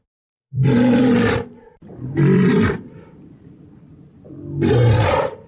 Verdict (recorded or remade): remade